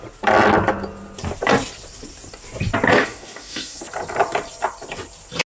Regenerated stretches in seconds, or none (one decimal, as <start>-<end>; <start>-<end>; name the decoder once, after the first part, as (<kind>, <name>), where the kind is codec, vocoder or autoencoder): 2.9-3.8 (codec, DAC)